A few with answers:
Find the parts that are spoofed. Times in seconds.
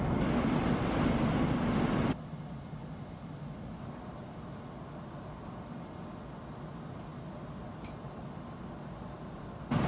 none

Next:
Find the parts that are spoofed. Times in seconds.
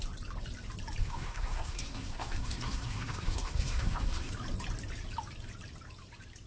1.0-4.3 (codec, SNAC)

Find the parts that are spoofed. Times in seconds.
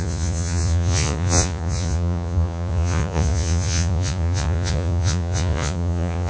0.0-6.3 (vocoder, Vocos)